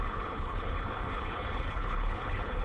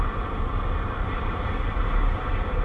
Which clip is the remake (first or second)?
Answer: first